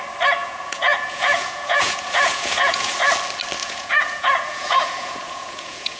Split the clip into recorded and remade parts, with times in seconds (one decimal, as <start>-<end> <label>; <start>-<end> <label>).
0.0-0.4 recorded; 0.4-2.9 remade; 2.9-3.6 recorded; 3.6-6.0 remade